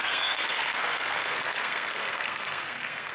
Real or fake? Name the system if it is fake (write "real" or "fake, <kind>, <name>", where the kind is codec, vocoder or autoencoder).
fake, codec, SNAC